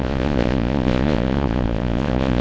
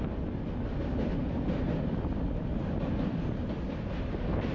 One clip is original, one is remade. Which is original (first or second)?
second